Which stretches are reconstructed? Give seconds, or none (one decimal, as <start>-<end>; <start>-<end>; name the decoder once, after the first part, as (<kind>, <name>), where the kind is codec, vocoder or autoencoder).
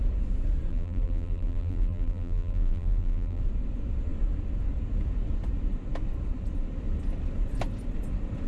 0.7-3.4 (vocoder, BigVGAN v2)